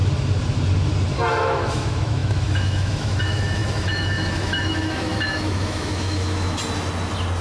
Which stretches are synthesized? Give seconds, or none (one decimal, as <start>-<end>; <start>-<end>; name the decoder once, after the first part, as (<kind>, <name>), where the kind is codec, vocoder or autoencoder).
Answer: 1.3-6.6 (autoencoder, DAC-VAE)